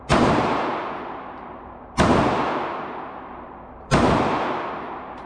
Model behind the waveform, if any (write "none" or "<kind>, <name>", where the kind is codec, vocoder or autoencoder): vocoder, BigVGAN v2